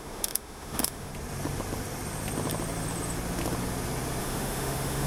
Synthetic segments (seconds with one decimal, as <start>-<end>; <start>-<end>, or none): 0.0-1.1; 4.2-5.1